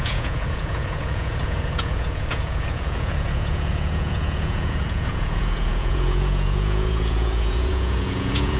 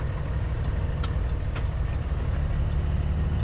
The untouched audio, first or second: second